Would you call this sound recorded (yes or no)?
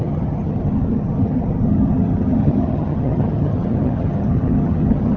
no